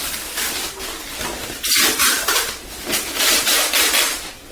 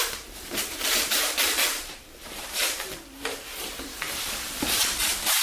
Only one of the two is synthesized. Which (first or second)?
second